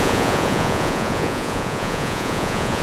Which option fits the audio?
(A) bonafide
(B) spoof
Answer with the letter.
B